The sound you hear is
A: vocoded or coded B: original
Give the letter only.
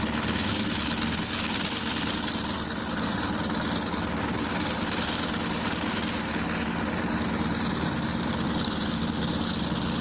B